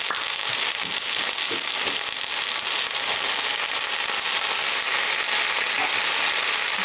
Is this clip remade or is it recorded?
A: recorded